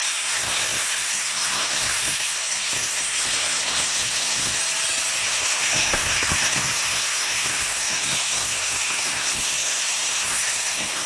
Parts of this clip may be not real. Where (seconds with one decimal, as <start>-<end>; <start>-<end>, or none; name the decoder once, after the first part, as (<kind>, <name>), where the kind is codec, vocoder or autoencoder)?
0.0-4.6 (codec, SNAC); 5.2-11.1